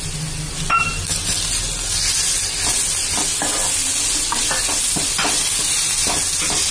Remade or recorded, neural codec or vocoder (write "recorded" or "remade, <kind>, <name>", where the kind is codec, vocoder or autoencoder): recorded